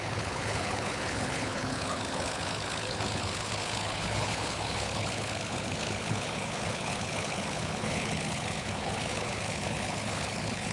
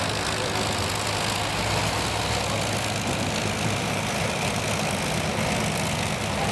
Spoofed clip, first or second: first